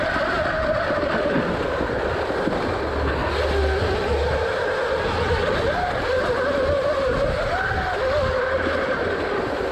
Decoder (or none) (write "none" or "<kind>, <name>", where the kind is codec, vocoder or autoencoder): none